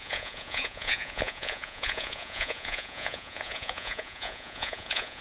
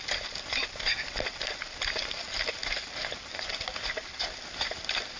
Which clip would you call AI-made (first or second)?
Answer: first